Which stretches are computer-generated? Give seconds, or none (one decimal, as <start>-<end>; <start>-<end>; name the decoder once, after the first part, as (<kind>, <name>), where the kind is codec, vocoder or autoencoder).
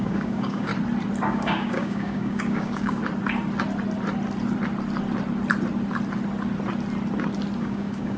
0.0-0.7 (codec, DAC); 1.3-3.0; 7.6-8.2